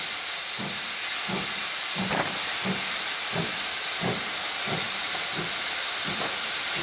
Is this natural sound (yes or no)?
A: yes